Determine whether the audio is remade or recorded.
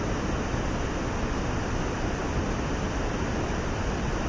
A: recorded